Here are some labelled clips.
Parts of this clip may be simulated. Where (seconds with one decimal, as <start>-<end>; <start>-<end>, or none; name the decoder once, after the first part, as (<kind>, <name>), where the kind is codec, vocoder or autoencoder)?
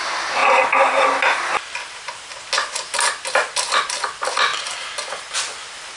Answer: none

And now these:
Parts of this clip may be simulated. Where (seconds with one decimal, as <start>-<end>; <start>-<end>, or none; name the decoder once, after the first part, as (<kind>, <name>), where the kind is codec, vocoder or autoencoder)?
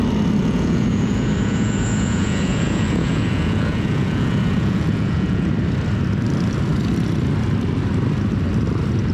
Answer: 0.4-5.5 (vocoder, Vocos)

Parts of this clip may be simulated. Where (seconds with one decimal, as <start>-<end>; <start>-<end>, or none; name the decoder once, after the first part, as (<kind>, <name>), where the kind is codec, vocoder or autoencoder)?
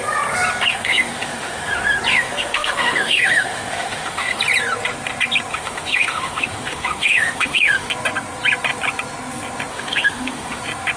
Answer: 0.7-1.7 (autoencoder, DAC-VAE); 2.1-4.4; 5.5-7.9; 9.7-10.6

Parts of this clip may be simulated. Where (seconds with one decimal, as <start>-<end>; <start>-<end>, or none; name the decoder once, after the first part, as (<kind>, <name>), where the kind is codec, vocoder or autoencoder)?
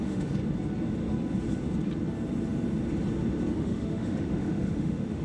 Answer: 0.0-0.4 (autoencoder, DAC-VAE); 3.5-5.2